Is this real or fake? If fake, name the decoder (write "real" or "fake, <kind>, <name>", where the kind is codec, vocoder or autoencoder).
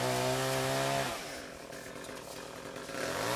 real